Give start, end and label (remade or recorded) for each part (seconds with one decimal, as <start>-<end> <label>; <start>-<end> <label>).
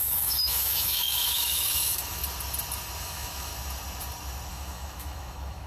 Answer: 0.0-2.2 remade; 2.2-3.0 recorded; 3.0-3.5 remade; 3.5-4.5 recorded; 4.5-5.7 remade